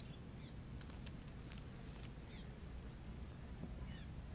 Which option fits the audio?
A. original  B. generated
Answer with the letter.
A